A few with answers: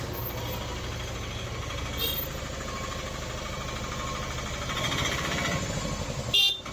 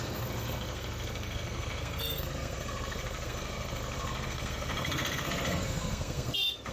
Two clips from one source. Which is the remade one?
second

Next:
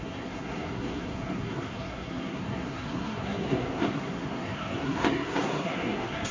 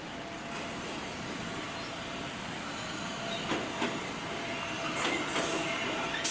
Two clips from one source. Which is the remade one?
first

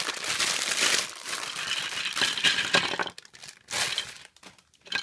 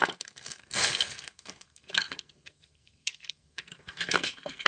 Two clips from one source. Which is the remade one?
second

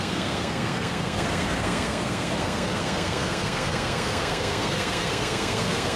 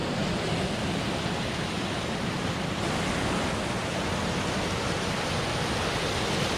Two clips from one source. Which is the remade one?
first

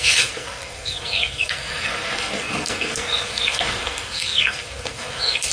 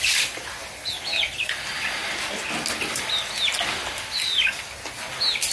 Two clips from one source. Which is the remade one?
first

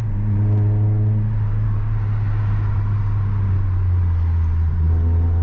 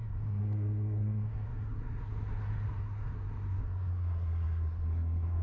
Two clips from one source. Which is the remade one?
second